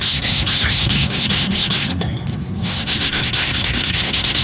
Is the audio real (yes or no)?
no